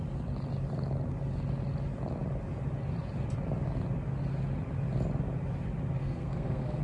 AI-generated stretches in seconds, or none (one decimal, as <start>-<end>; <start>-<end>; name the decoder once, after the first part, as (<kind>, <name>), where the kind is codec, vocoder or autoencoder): 6.0-6.8 (codec, SNAC)